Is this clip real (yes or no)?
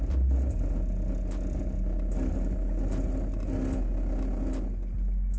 yes